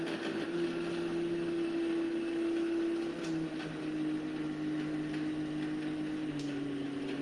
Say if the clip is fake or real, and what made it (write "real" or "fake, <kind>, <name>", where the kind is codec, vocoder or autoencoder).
real